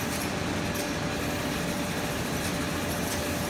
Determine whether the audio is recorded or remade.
recorded